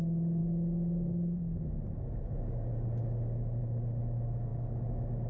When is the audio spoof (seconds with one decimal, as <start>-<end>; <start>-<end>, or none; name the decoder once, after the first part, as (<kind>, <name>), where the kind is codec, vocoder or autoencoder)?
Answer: none